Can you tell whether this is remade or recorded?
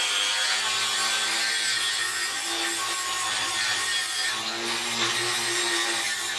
recorded